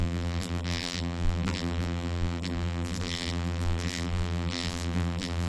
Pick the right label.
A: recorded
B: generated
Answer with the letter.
B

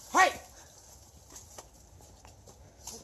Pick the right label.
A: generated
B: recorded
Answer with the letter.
B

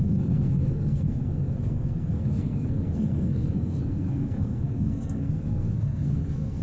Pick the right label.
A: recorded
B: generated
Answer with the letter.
B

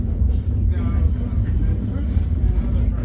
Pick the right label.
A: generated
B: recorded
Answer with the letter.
B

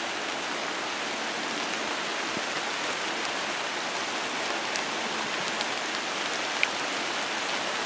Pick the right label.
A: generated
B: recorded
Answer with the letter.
B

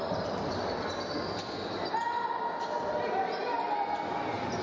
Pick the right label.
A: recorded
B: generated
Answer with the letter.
A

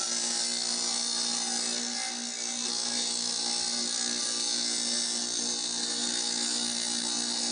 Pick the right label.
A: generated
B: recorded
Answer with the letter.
B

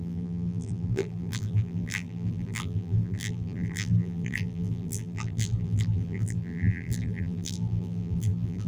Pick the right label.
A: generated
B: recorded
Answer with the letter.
A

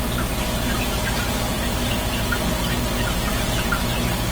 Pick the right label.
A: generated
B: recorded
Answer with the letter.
B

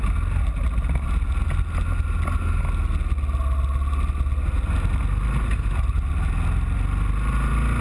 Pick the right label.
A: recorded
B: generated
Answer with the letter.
A